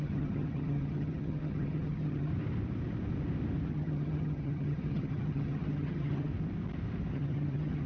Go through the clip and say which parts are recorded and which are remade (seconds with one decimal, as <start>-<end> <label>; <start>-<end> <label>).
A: 0.0-2.3 remade; 2.3-3.7 recorded; 3.7-6.3 remade; 6.3-7.1 recorded; 7.1-7.9 remade